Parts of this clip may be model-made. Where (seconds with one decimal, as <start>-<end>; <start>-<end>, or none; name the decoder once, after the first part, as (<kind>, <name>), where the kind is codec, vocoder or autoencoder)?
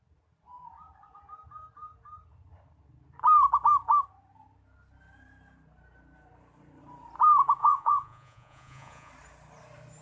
7.6-9.1 (vocoder, Vocos)